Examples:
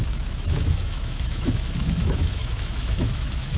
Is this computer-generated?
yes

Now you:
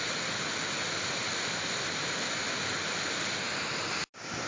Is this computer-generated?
no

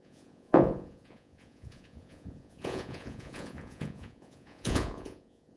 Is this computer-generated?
yes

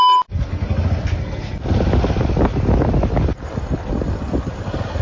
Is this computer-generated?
no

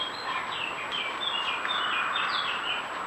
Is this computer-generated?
no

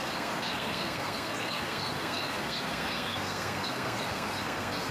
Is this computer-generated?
yes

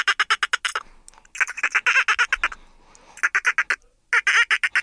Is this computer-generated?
no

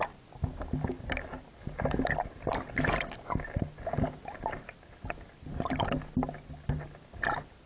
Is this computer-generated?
no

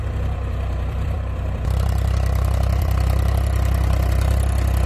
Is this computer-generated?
yes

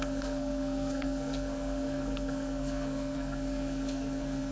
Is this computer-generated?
yes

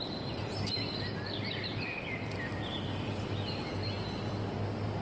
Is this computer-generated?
no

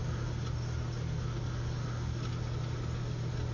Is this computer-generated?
no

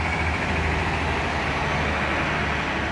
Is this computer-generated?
no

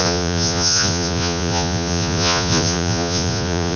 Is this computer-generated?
yes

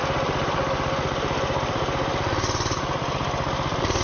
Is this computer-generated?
yes